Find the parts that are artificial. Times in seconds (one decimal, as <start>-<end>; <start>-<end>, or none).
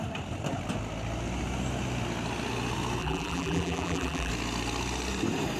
3.0-4.3